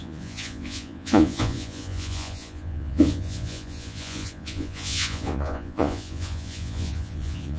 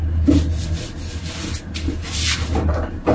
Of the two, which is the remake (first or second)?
first